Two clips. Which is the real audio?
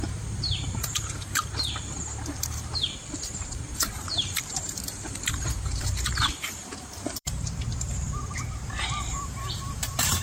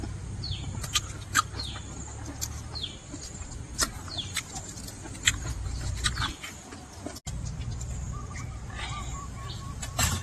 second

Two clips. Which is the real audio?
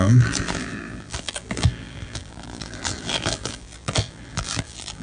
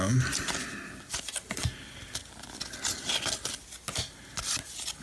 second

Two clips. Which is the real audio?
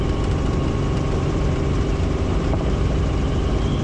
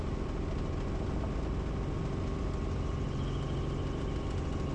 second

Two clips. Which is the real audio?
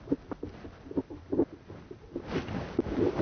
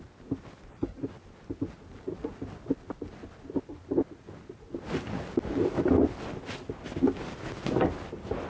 second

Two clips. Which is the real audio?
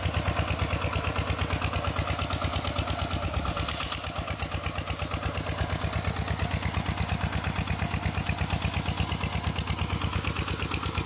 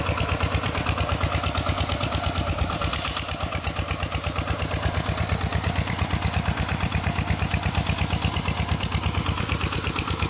first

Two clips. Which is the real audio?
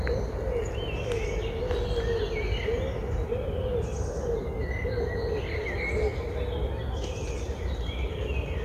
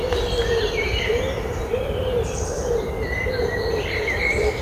first